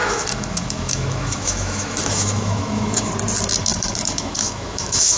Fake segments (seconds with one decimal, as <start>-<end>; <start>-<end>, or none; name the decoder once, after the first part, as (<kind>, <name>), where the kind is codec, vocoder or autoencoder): 0.0-3.1 (autoencoder, DAC-VAE); 3.7-5.2